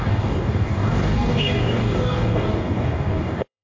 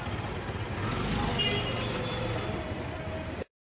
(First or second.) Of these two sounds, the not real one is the first